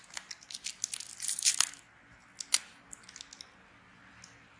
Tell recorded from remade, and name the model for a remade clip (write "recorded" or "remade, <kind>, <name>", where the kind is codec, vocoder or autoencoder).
recorded